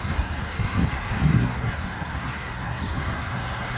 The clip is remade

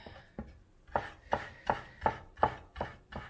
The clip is recorded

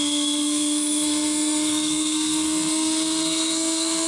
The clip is remade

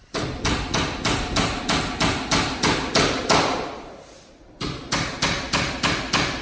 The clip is recorded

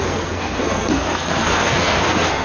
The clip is remade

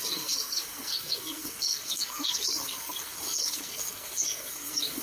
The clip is remade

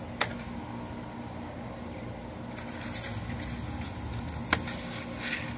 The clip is recorded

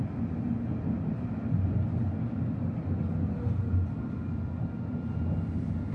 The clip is recorded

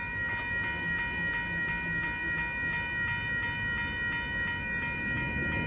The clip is recorded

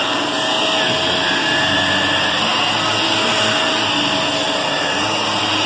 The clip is recorded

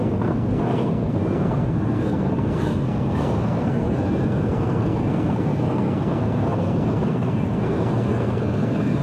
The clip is remade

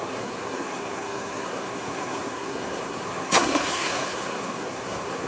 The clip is remade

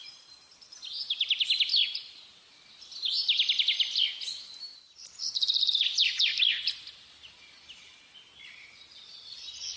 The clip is recorded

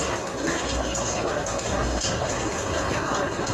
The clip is remade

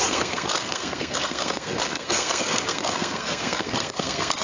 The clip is remade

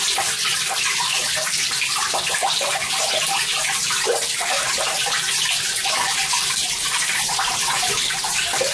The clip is recorded